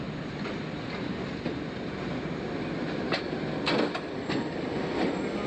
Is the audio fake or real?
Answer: real